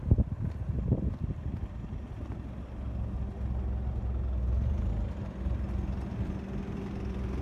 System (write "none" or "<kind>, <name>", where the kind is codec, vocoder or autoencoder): none